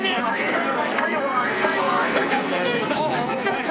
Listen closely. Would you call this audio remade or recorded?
remade